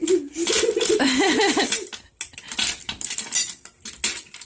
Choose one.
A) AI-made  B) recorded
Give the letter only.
B